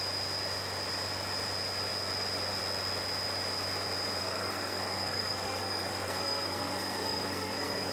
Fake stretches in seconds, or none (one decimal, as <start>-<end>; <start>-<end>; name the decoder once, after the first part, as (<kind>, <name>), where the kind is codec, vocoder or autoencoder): 4.2-7.9 (codec, SNAC)